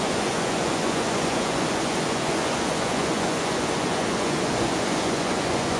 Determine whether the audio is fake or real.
fake